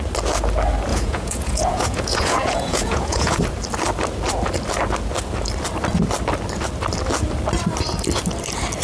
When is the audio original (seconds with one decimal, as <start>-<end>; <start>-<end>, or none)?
0.0-0.9; 3.4-8.8